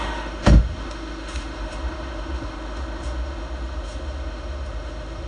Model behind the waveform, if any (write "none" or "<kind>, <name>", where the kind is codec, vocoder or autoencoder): autoencoder, DAC-VAE